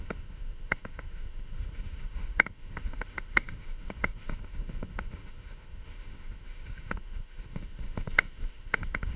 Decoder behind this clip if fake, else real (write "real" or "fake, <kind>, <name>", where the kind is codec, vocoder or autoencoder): fake, autoencoder, DAC-VAE